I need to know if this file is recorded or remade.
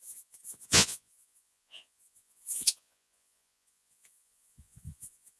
remade